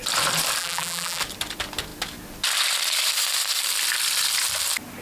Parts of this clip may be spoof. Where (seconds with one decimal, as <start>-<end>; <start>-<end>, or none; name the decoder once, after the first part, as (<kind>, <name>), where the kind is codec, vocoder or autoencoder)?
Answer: 0.6-1.2 (vocoder, BigVGAN v2)